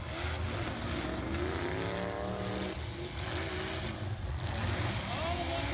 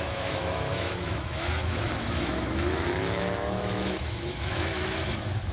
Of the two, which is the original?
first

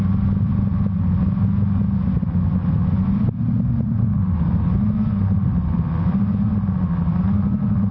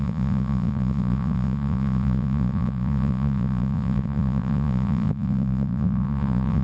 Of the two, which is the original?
first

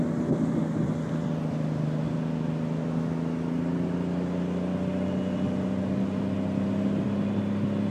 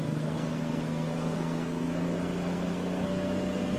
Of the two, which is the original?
first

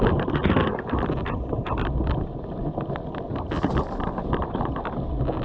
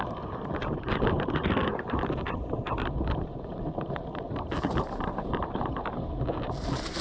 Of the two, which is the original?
first